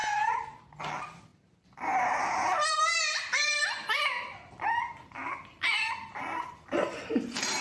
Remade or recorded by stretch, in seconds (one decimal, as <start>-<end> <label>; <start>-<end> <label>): 0.0-0.8 recorded; 0.8-7.6 remade